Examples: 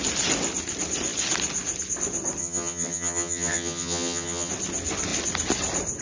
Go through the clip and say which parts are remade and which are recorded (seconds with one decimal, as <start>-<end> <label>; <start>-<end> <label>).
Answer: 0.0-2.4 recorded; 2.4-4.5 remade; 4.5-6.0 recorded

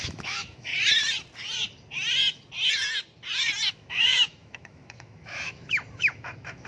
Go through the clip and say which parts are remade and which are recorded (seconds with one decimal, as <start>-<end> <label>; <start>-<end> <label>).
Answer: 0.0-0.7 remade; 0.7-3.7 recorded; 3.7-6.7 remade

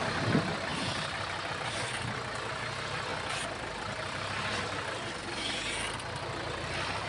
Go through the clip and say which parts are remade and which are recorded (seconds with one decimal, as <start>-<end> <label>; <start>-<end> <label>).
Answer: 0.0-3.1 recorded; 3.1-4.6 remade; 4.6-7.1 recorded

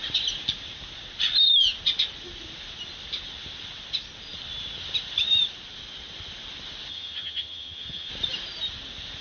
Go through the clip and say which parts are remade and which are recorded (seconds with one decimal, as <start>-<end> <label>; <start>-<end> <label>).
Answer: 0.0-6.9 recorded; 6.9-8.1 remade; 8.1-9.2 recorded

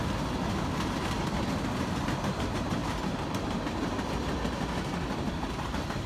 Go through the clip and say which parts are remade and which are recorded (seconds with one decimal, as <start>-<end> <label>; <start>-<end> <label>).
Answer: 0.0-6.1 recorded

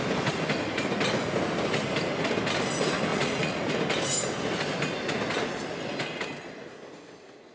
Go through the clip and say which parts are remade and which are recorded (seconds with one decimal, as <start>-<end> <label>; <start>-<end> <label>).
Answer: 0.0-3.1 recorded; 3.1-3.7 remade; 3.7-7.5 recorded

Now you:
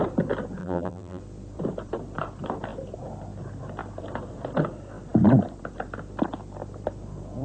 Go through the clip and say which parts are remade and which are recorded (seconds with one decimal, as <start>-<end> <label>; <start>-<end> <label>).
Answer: 0.0-0.6 recorded; 0.6-1.2 remade; 1.2-7.4 recorded